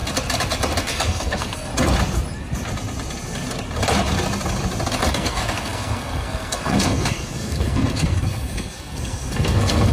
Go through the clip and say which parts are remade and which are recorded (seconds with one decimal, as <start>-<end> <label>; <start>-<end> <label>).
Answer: 0.0-0.8 recorded; 0.8-1.7 remade; 1.7-5.1 recorded; 5.1-9.9 remade